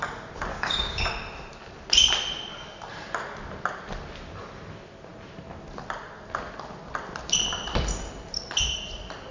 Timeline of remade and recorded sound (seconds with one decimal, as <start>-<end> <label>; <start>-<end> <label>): 0.0-0.5 recorded; 0.5-1.1 remade; 1.1-9.3 recorded